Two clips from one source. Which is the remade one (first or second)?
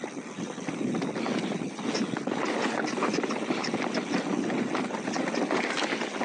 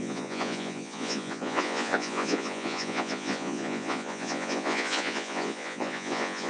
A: second